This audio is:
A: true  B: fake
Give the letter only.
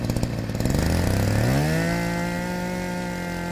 A